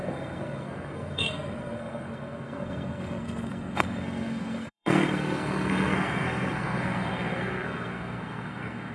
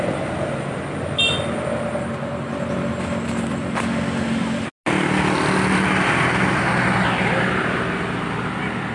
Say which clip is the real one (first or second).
second